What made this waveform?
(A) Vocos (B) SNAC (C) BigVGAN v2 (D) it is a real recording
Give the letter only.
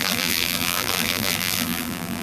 C